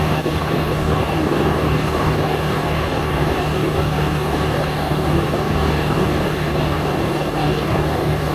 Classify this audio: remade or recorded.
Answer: remade